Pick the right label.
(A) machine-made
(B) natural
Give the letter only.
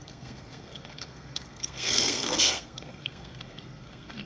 A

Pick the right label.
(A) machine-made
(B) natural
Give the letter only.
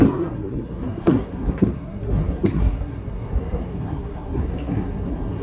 A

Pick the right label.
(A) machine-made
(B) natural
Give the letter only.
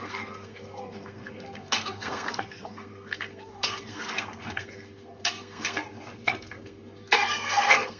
A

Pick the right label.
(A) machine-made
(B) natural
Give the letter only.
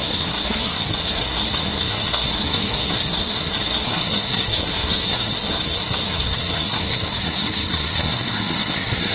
A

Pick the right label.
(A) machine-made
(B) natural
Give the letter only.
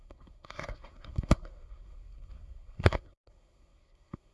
A